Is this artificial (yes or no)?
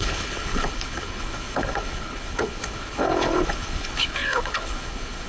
yes